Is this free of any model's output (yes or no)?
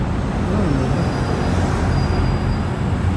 yes